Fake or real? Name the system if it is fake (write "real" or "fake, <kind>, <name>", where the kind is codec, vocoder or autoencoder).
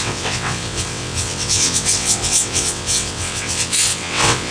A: fake, vocoder, WaveNeXt